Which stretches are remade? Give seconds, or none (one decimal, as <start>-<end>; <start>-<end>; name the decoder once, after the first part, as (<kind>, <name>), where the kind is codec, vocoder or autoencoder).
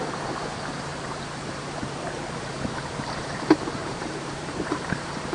0.9-2.4 (vocoder, BigVGAN v2); 3.8-5.3